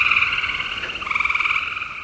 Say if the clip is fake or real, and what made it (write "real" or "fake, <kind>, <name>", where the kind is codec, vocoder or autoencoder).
real